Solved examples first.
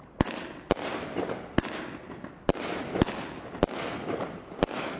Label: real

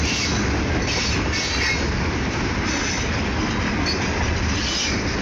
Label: real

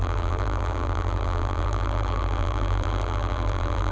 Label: fake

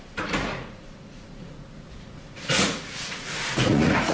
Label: fake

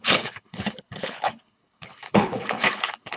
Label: fake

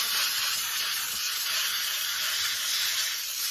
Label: fake